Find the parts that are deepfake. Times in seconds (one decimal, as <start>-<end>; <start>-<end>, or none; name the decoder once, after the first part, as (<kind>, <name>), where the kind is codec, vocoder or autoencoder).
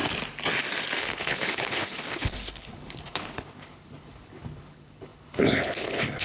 1.0-6.2 (codec, HILCodec)